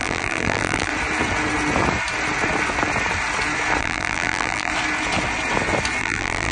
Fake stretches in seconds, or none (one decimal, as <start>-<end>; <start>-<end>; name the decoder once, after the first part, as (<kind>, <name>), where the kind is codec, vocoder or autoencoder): 0.0-0.9 (vocoder, BigVGAN v2); 3.8-4.7; 6.0-6.5